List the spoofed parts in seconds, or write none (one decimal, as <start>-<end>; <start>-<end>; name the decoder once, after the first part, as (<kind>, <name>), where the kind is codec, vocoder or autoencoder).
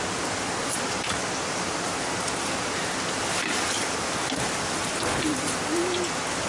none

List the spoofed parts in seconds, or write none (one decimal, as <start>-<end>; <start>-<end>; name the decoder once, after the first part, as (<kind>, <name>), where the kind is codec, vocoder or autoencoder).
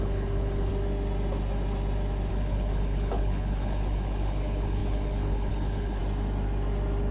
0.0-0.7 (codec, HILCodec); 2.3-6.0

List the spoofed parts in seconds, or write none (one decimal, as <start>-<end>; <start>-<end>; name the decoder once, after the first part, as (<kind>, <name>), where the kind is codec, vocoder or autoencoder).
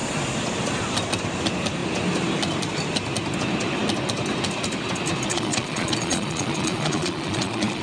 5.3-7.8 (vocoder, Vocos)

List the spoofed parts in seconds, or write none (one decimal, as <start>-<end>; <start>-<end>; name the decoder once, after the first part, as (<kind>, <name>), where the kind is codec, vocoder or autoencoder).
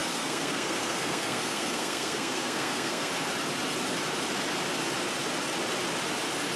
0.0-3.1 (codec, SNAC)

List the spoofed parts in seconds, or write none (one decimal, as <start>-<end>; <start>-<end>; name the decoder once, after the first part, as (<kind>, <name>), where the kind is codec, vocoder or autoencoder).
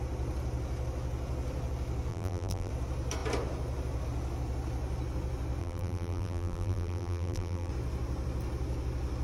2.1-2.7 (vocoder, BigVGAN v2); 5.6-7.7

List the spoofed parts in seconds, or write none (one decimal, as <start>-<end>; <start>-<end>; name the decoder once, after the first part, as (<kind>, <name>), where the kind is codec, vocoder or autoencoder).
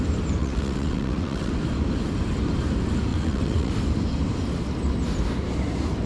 0.4-1.5 (vocoder, WaveNeXt); 3.1-3.7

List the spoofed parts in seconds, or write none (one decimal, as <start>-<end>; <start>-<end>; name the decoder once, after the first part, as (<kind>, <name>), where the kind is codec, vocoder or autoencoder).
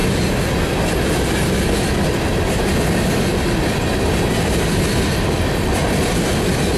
none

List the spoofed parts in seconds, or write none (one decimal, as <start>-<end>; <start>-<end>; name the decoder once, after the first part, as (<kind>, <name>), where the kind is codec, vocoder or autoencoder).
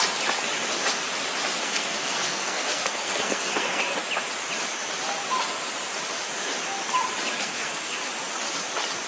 1.6-3.8 (codec, SNAC); 7.4-8.0